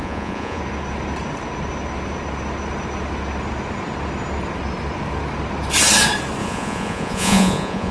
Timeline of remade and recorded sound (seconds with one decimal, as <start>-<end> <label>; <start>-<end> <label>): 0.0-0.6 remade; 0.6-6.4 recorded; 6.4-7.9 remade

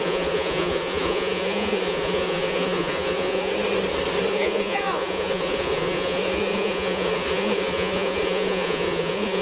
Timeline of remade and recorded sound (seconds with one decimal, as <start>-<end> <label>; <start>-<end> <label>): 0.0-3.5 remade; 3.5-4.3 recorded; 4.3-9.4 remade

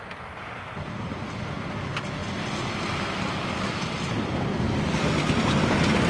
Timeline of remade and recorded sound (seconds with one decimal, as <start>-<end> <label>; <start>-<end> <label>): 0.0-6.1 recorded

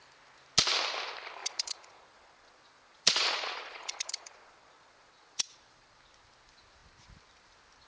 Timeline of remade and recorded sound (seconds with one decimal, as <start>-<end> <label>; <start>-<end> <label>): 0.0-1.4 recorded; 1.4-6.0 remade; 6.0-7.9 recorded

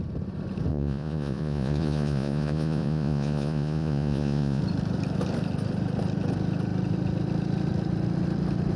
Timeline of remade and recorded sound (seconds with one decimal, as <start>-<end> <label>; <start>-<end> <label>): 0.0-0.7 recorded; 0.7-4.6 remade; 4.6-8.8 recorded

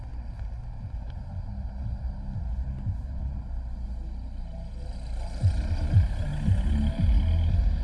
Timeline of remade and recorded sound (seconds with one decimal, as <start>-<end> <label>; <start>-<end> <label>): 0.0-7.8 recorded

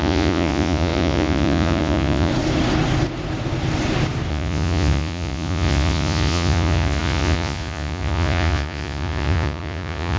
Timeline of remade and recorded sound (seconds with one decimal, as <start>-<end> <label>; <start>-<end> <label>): 0.0-2.3 remade; 2.3-4.3 recorded; 4.3-10.2 remade